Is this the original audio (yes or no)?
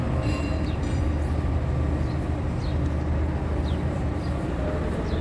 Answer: yes